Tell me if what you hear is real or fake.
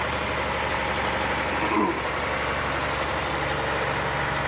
real